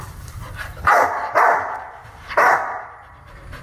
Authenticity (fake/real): fake